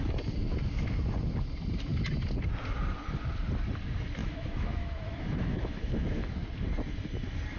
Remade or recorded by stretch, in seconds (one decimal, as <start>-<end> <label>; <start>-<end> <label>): 0.0-4.2 recorded; 4.2-6.4 remade; 6.4-7.6 recorded